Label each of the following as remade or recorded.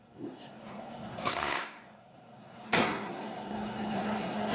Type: remade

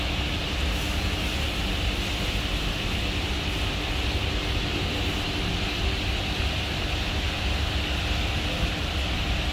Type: recorded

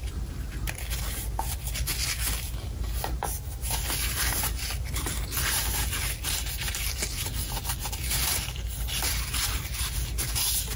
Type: recorded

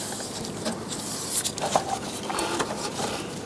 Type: recorded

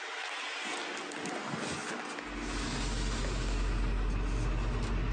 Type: recorded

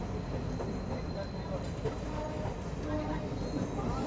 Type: recorded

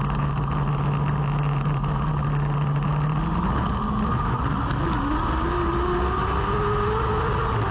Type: recorded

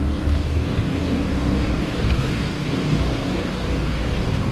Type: remade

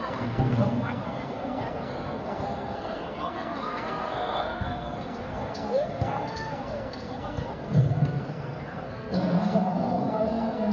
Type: remade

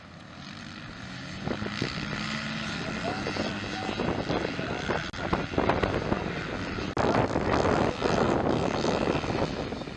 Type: recorded